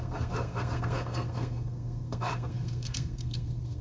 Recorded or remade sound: remade